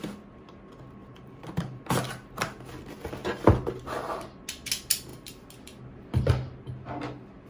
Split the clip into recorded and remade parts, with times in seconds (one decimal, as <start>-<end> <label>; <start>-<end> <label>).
0.0-1.0 recorded; 1.0-1.8 remade; 1.8-7.5 recorded